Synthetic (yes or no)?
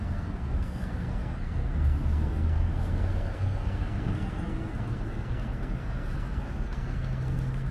yes